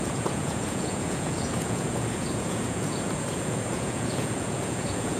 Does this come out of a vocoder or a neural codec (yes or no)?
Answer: yes